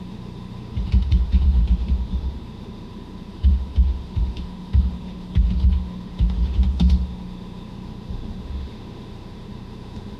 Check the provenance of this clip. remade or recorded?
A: remade